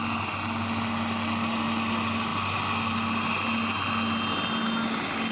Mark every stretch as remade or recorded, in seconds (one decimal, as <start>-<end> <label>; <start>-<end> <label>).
0.0-5.3 recorded